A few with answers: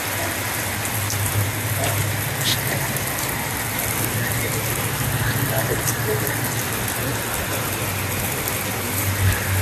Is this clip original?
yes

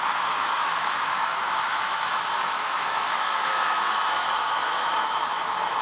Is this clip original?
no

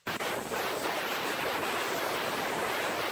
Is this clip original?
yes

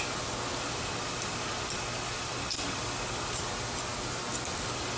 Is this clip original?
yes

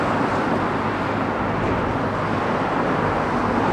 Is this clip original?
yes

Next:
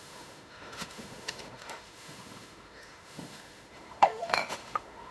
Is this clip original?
no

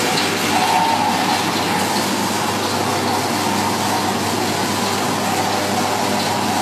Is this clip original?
yes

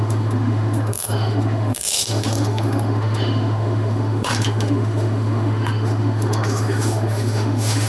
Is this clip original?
no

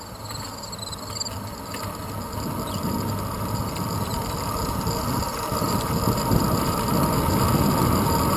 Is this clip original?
yes